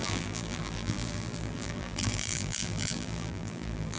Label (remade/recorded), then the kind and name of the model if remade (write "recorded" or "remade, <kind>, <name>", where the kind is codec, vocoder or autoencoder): remade, vocoder, BigVGAN v2